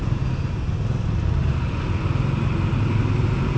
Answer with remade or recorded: recorded